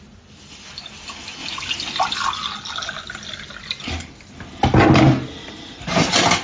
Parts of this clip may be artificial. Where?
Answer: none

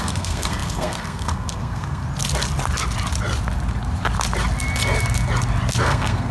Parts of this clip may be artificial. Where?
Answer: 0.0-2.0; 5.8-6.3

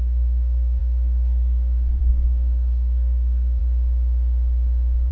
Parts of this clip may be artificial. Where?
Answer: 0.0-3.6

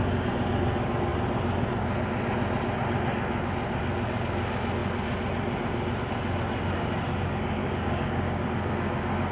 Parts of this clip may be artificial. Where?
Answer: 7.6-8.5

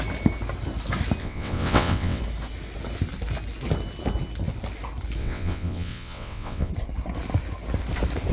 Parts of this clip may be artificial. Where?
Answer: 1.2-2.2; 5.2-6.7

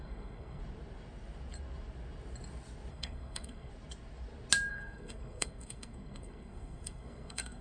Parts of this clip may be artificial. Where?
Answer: 0.0-0.6; 2.9-3.7; 4.7-7.6

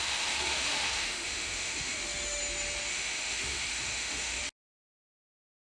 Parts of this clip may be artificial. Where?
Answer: 0.0-2.4; 2.9-4.4; 5.3-5.7

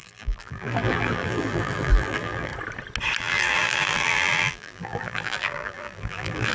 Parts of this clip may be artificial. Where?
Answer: 0.0-2.5; 3.2-6.5